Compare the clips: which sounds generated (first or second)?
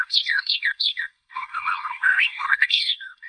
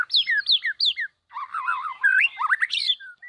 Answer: first